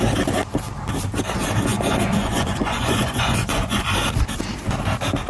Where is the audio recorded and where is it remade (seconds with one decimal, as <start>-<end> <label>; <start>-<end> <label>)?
0.0-1.7 recorded; 1.7-3.9 remade; 3.9-5.3 recorded